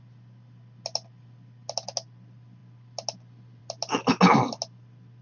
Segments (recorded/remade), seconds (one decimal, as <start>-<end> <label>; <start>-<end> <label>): 0.0-5.2 recorded